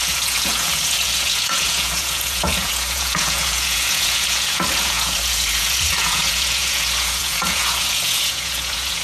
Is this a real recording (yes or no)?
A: no